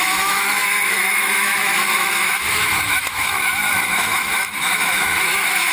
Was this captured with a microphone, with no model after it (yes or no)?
no